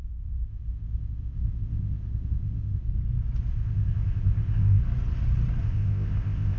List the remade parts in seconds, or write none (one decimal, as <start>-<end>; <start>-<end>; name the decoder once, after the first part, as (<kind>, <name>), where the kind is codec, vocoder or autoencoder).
0.0-2.9 (codec, ZipCodec); 3.5-4.8; 5.6-6.6